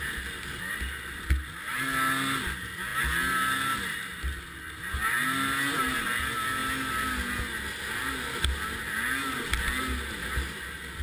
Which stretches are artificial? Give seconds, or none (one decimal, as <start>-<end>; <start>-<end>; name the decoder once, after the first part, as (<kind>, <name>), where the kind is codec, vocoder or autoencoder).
none